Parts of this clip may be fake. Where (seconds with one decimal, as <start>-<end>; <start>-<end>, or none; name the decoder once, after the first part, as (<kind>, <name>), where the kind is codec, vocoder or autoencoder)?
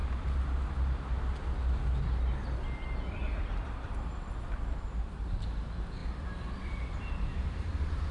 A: 3.2-4.4 (vocoder, BigVGAN v2); 6.0-8.1